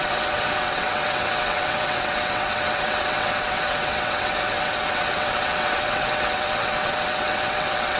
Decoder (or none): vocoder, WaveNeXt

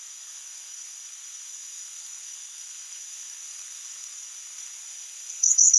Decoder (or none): codec, SNAC